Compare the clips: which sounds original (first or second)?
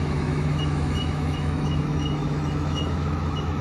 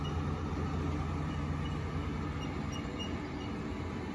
second